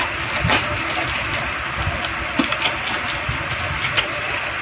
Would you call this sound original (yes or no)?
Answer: yes